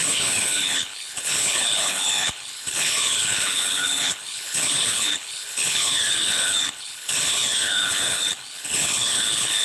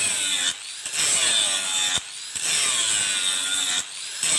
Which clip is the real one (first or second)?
second